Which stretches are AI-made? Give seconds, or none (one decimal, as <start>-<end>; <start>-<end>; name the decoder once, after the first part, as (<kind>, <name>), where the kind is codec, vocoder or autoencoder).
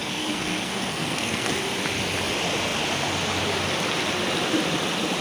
0.0-1.5 (codec, SNAC)